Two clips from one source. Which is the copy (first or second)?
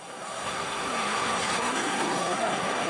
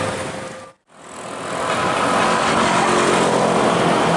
first